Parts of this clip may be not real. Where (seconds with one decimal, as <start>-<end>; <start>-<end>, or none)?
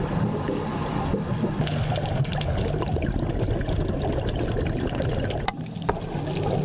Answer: none